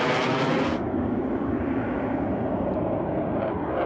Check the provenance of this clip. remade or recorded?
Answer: recorded